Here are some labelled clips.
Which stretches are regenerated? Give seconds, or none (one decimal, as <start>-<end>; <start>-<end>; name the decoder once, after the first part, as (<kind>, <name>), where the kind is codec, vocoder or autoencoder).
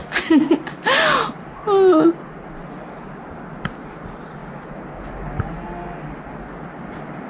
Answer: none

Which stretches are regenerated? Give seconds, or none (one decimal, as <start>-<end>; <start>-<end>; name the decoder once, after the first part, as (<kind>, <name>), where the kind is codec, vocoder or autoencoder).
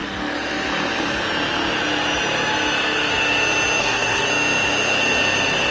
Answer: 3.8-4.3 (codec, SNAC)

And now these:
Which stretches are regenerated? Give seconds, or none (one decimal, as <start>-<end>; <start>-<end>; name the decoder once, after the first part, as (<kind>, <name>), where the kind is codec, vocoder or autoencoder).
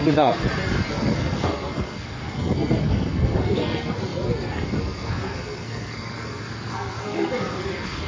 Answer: 0.0-0.4 (codec, SNAC); 0.9-8.1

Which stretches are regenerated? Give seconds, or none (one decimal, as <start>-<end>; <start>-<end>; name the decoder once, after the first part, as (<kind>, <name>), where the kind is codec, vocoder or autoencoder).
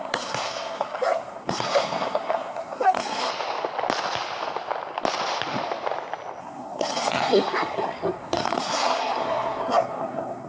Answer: 0.0-3.3 (codec, SNAC); 6.4-10.5